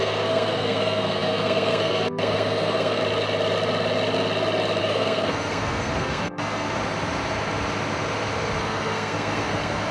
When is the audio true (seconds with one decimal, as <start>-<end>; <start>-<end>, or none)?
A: 3.0-4.8; 6.8-8.6